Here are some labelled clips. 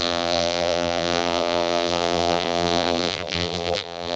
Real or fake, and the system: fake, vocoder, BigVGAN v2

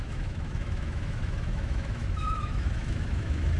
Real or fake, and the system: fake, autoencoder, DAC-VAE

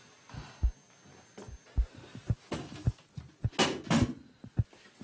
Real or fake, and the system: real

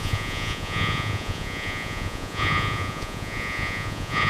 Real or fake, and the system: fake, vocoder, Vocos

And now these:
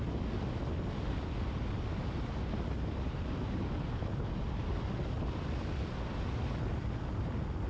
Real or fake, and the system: real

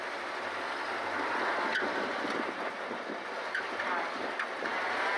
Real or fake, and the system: real